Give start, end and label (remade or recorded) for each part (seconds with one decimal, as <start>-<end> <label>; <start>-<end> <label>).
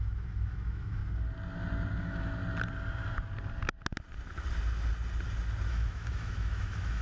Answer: 0.0-1.0 remade; 1.0-2.0 recorded; 2.0-2.4 remade; 2.4-5.7 recorded; 5.7-7.0 remade